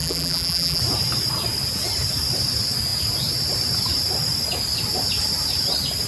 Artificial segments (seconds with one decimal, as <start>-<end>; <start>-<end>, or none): 0.0-0.8